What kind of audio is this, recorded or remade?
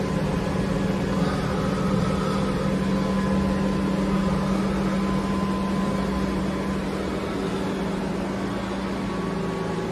recorded